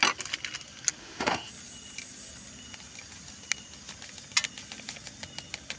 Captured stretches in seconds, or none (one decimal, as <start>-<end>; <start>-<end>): 0.0-1.0; 1.5-5.8